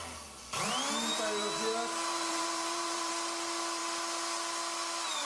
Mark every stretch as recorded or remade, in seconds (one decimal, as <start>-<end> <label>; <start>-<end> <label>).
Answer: 0.0-2.1 recorded; 2.1-3.1 remade; 3.1-5.3 recorded